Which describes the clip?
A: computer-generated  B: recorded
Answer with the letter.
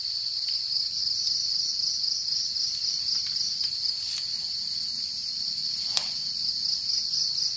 B